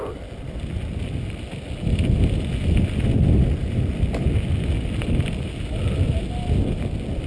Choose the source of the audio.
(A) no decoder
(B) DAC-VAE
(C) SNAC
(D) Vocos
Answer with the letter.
A